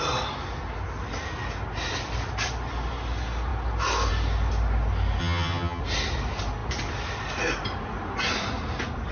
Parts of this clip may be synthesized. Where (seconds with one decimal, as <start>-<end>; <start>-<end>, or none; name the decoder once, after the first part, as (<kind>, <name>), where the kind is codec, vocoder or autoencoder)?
5.2-5.8 (vocoder, HiFi-GAN)